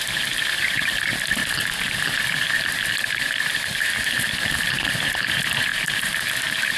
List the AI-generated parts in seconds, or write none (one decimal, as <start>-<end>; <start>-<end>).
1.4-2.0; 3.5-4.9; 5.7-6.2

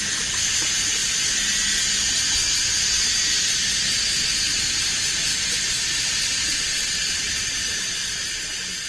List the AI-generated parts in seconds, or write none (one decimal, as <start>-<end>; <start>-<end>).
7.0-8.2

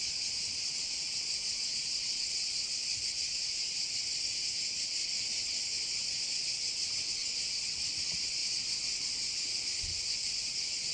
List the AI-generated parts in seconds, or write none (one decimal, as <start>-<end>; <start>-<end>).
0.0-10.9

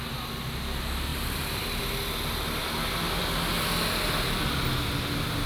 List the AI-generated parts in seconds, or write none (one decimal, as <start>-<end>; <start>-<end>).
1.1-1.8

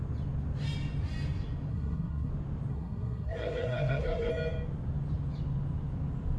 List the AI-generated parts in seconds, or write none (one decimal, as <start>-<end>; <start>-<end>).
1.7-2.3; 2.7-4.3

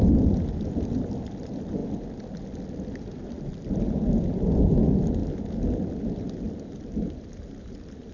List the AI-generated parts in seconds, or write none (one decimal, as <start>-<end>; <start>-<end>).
none

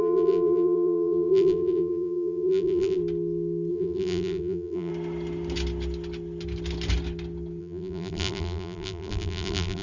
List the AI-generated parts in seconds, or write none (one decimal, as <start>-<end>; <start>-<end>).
0.0-3.0; 3.7-4.9; 7.6-9.8

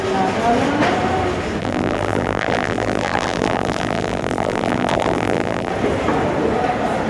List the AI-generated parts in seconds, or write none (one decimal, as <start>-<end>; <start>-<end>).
1.6-5.7